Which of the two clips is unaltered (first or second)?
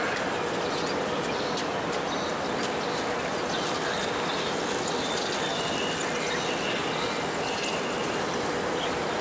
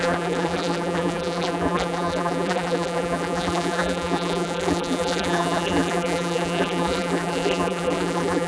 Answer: first